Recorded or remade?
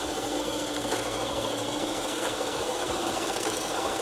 remade